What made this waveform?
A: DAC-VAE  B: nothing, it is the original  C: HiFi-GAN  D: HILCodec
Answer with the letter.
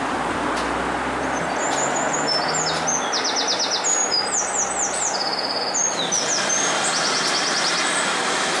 B